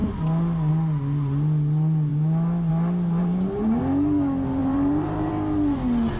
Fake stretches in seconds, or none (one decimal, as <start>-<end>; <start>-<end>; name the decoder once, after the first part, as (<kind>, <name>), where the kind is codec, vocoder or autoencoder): 3.2-3.8 (vocoder, BigVGAN v2); 4.6-5.3